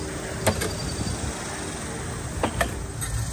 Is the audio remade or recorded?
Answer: recorded